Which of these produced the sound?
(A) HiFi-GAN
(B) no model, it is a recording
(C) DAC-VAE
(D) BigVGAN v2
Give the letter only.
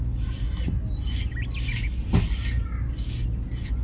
B